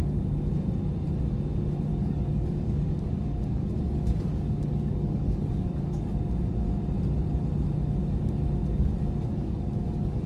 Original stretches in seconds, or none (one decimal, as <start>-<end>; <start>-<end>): 0.0-1.9; 6.2-8.7